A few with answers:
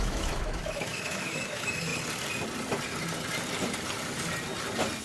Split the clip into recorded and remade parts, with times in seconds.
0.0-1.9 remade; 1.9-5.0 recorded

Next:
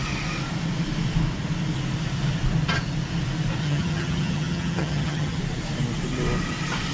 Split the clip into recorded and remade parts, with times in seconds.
0.0-3.6 recorded; 3.6-5.4 remade; 5.4-6.9 recorded

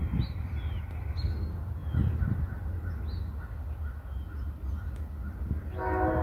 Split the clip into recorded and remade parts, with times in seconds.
0.0-6.2 recorded

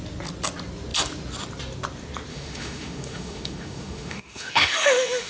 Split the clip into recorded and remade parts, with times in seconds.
0.0-2.3 recorded; 2.3-5.3 remade